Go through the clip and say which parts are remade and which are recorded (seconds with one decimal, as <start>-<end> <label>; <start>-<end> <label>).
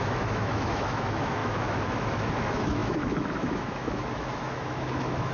0.0-5.3 remade